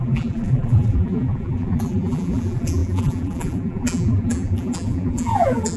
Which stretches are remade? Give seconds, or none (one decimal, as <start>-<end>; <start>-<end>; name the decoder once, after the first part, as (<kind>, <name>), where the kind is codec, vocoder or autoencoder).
0.0-5.8 (vocoder, BigVGAN v2)